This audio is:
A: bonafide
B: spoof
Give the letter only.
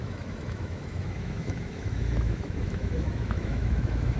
B